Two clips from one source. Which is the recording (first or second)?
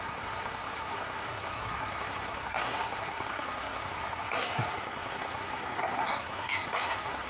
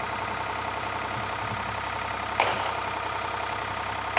second